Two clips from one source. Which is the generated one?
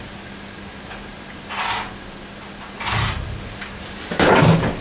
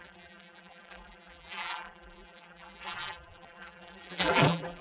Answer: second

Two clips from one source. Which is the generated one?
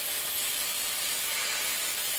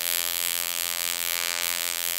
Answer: second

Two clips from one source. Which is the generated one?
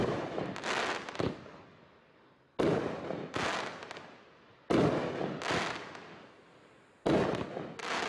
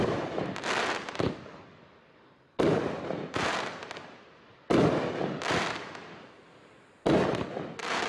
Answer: second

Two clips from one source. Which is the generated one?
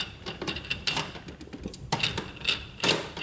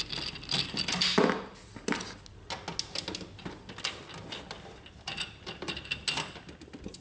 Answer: first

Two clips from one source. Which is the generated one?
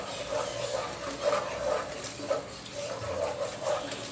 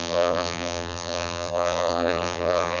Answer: second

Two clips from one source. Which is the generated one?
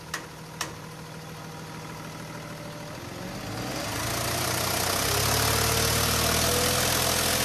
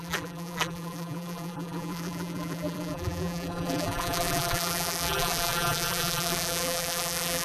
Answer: second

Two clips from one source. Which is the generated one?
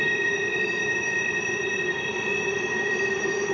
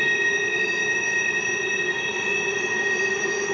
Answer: first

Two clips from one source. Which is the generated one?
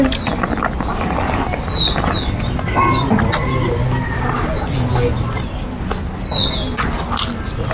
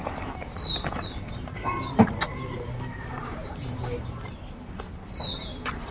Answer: second